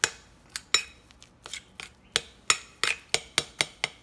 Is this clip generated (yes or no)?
no